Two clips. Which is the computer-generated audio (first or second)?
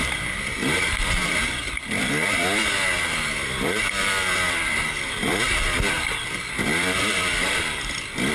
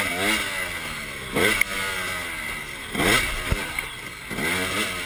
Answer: first